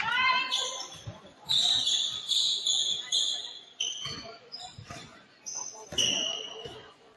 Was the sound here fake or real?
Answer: fake